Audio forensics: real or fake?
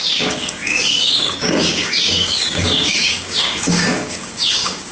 fake